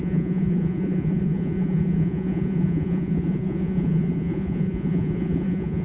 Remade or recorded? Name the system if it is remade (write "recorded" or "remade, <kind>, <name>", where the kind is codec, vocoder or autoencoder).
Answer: remade, vocoder, Vocos